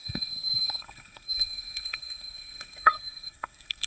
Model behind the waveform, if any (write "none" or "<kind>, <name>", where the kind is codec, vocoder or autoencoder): codec, SNAC